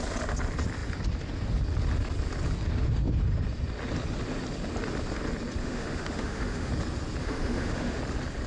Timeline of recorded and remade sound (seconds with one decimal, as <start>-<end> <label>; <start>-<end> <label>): 0.0-5.6 recorded; 5.6-6.7 remade; 6.7-7.2 recorded; 7.2-8.0 remade; 8.0-8.5 recorded